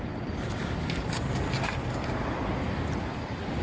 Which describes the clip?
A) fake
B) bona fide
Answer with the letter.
B